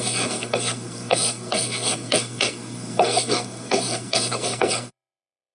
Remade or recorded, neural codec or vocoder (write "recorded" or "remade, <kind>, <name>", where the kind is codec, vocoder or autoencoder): remade, codec, SNAC